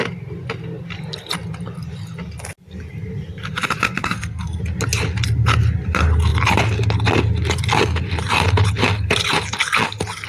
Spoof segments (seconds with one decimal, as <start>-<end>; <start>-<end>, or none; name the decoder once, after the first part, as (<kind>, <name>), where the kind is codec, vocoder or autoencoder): 4.0-4.6 (codec, SNAC)